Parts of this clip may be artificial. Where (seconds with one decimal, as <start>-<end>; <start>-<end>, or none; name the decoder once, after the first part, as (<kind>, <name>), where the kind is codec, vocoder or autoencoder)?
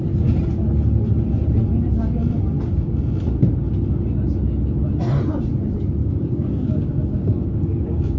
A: 6.0-8.2 (codec, DAC)